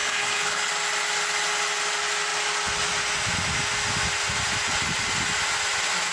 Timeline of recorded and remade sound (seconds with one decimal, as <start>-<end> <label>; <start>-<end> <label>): 0.0-0.7 remade; 0.7-6.1 recorded